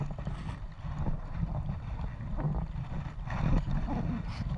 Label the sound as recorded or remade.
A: recorded